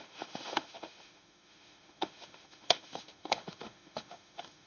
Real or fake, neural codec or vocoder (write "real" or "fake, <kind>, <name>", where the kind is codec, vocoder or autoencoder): fake, autoencoder, DAC-VAE